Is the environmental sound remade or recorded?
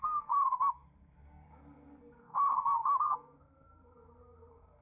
remade